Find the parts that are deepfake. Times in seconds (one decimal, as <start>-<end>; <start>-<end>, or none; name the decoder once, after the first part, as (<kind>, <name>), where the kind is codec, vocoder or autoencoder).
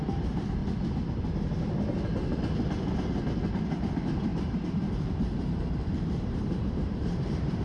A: 0.0-0.6 (vocoder, BigVGAN v2); 3.9-7.6